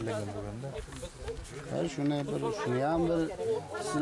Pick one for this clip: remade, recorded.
recorded